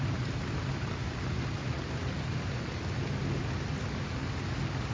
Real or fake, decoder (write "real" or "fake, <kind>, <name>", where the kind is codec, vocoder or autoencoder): real